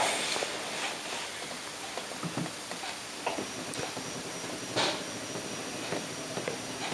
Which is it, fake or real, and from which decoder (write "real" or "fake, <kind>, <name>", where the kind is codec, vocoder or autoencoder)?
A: real